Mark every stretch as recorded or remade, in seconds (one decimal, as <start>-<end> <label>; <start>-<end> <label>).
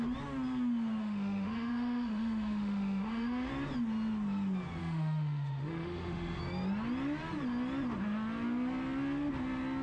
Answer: 0.0-1.0 recorded; 1.0-3.5 remade; 3.5-4.8 recorded; 4.8-6.4 remade; 6.4-9.8 recorded